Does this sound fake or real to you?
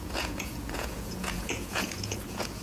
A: fake